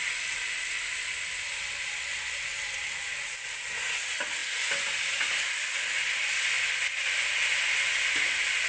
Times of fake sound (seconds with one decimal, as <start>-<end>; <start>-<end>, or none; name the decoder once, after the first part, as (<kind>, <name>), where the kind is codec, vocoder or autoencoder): none